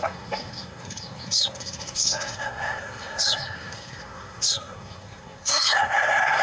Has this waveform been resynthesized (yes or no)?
yes